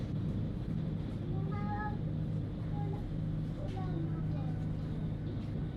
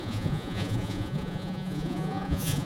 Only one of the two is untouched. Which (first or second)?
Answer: first